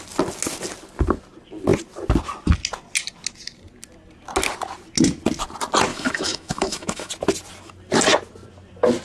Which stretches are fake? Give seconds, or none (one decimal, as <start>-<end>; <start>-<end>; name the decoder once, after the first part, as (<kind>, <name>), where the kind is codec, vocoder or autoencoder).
5.9-7.1 (autoencoder, DAC-VAE)